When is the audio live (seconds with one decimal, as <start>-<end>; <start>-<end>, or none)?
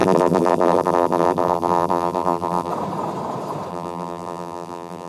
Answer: 2.7-3.7